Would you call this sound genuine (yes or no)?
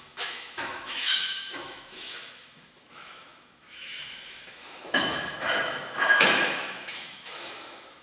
no